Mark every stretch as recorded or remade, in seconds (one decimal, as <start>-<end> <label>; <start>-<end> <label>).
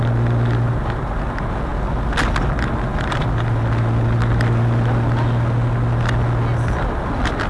0.0-7.5 recorded